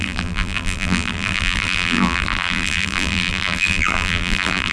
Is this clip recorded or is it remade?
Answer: remade